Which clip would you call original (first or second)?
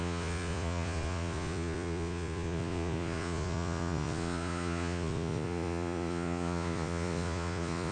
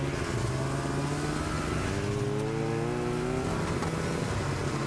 second